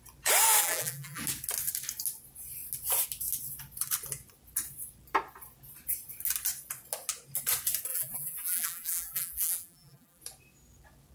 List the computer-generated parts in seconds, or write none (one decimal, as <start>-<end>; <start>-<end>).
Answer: 0.6-1.2; 7.9-10.2